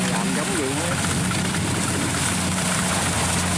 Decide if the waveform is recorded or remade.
remade